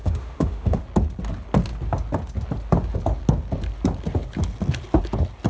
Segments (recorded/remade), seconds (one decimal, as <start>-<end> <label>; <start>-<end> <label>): 0.0-0.8 remade; 0.8-5.5 recorded